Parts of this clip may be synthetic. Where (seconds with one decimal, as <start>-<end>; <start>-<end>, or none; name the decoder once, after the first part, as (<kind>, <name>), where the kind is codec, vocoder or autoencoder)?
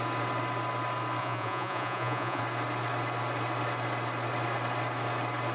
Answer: 1.2-2.4 (vocoder, Vocos)